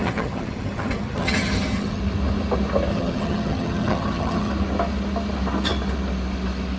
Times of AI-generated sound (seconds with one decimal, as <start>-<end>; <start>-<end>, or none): 0.0-2.0; 2.9-4.5